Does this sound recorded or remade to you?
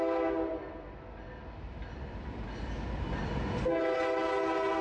recorded